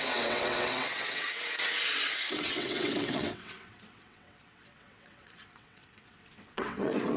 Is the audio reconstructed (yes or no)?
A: yes